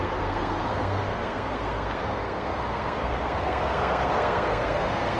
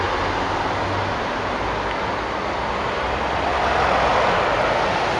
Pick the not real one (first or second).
first